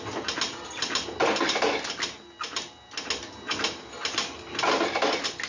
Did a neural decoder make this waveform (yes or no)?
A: no